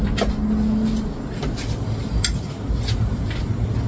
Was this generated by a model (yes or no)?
no